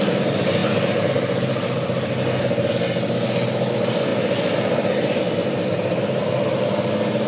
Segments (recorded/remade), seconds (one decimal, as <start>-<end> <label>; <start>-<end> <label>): 0.0-7.3 recorded